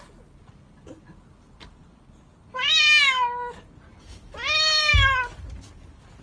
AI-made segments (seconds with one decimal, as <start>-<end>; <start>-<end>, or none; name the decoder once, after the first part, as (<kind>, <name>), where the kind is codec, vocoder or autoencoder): none